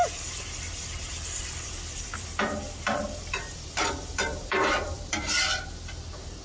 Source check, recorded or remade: remade